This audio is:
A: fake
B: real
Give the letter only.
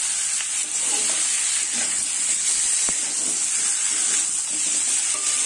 B